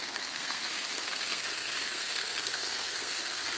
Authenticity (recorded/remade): remade